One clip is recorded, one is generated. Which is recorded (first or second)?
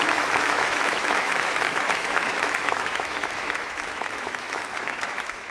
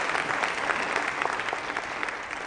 second